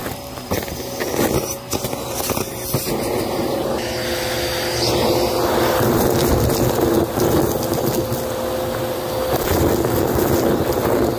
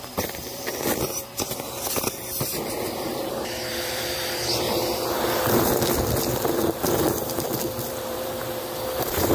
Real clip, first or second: first